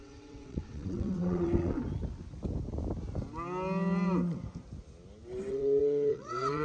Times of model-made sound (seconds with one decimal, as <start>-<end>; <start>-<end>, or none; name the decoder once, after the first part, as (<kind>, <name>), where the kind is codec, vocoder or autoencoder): 0.0-1.8 (vocoder, WaveNeXt); 5.5-6.6